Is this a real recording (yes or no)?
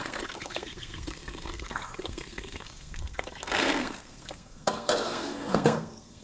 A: no